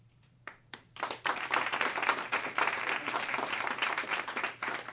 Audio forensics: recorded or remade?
remade